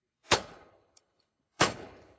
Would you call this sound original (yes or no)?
no